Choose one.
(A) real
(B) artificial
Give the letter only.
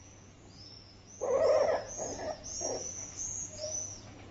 B